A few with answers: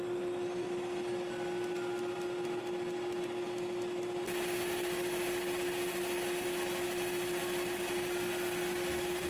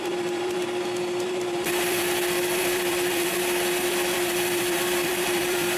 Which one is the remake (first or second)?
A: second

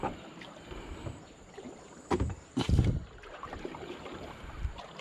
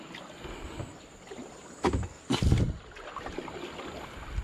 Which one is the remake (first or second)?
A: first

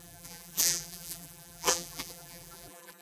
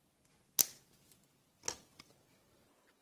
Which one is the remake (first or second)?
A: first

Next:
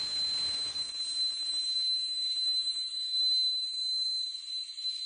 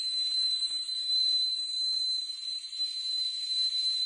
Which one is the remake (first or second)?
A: second